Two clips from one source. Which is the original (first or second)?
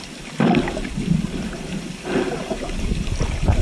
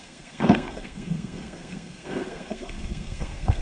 first